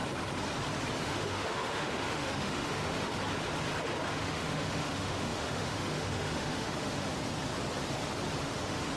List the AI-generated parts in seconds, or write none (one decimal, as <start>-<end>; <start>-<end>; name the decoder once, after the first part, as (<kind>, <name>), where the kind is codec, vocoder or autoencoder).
1.0-3.1 (autoencoder, DAC-VAE); 4.1-7.1; 8.4-9.0